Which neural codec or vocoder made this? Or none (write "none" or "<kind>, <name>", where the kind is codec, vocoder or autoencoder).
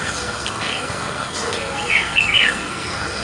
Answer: codec, SNAC